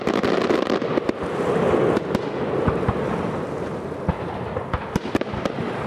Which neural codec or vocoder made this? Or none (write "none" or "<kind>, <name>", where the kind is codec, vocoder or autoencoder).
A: none